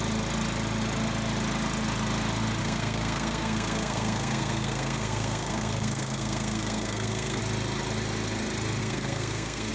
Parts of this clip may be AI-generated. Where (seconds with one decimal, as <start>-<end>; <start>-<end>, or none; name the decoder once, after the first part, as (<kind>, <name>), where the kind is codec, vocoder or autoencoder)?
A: 2.6-7.4 (codec, SNAC); 8.8-9.7